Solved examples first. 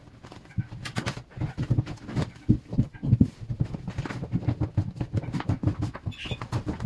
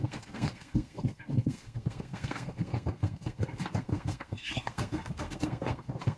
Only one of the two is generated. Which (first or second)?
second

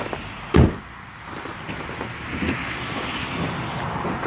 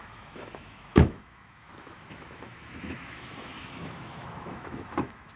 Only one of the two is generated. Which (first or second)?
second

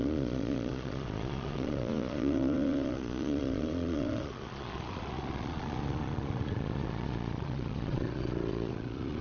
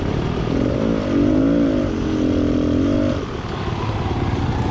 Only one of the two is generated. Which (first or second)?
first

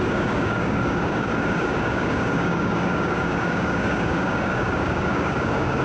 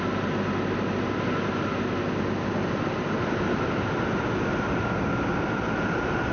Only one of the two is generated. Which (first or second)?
first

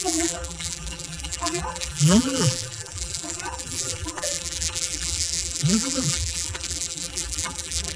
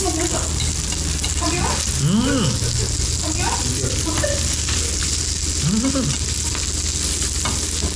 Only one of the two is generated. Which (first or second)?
first